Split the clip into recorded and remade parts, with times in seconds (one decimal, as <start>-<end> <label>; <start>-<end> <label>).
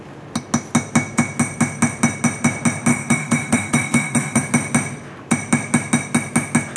0.0-2.9 recorded; 2.9-4.4 remade; 4.4-6.8 recorded